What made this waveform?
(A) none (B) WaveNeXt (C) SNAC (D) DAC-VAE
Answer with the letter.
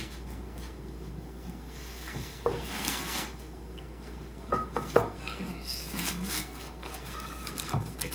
C